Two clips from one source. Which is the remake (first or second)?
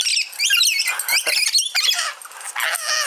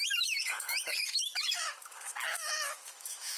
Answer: second